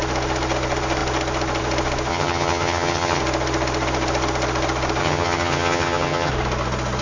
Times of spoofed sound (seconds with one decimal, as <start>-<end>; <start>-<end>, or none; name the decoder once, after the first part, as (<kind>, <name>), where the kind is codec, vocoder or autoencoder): 2.1-3.2 (vocoder, HiFi-GAN); 5.0-6.3